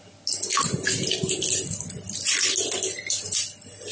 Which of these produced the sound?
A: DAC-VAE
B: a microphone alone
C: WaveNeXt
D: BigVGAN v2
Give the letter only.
B